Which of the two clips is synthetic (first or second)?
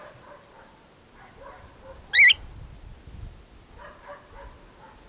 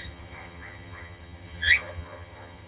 second